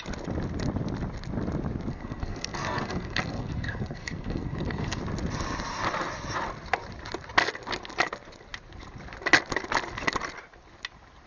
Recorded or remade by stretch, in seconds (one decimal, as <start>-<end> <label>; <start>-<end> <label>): 0.0-1.9 recorded; 1.9-5.0 remade; 5.0-11.3 recorded